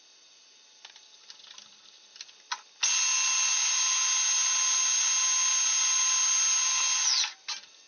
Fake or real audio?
real